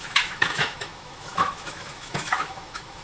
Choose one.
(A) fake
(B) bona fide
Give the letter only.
A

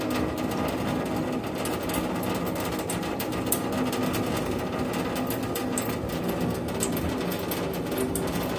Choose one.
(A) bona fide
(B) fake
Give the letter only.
A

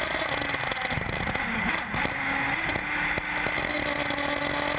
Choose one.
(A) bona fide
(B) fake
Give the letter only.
A